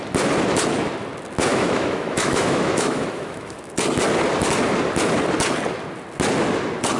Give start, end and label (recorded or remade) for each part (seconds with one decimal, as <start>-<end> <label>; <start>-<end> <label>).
0.0-1.5 recorded; 1.5-3.7 remade; 3.7-7.0 recorded